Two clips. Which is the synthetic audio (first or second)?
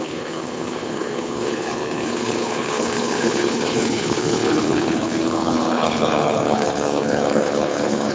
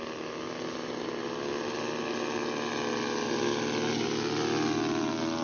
first